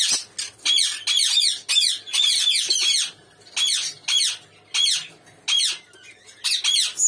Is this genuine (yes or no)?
yes